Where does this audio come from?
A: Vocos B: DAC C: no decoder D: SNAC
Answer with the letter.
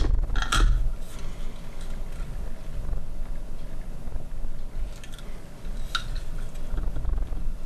C